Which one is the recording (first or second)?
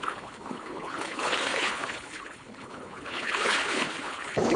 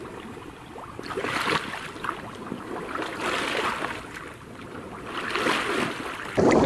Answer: second